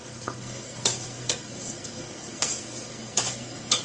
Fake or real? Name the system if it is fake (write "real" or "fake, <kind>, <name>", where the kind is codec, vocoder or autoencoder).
fake, codec, SNAC